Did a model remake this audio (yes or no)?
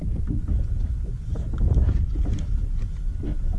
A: no